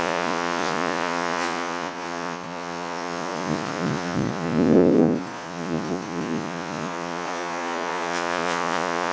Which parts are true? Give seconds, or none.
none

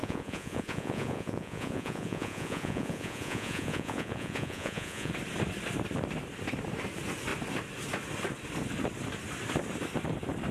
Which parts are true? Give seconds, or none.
5.1-10.5

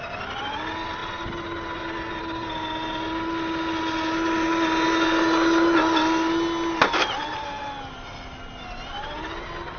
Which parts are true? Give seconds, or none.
0.0-9.8

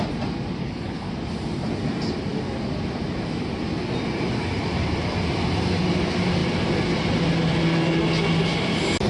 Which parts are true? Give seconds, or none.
0.0-0.6; 1.1-9.1

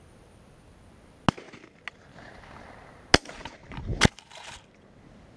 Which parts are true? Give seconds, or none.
0.0-5.4

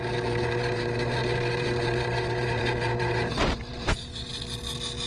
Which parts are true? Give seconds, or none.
4.3-5.1

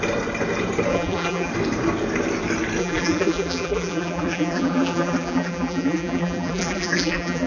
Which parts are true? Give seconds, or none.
0.0-0.9; 1.5-2.8

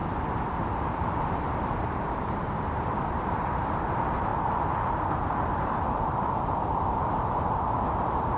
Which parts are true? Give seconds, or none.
0.0-1.2